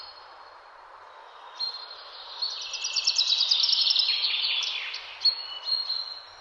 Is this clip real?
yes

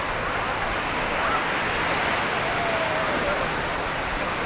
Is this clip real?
yes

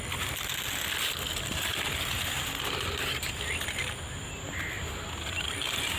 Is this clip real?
yes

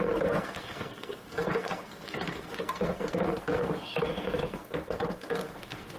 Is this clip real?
no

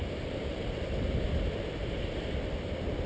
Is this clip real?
yes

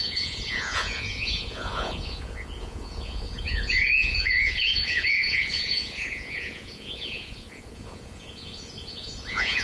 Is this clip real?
no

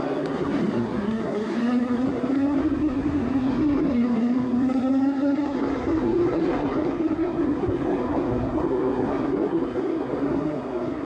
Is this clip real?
no